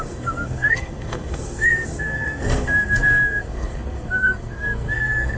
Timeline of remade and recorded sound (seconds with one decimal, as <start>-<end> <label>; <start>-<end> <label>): 0.0-5.4 remade